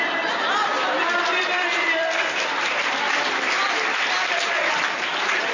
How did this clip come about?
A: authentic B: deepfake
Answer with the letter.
B